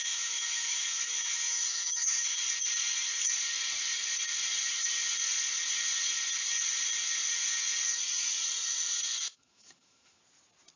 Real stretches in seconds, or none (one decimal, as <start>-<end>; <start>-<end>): 2.4-9.2; 10.2-10.8